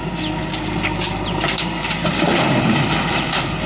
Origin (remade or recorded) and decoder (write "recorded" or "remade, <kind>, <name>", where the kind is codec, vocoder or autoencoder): recorded